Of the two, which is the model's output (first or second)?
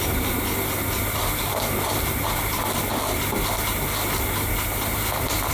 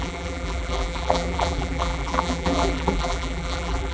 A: second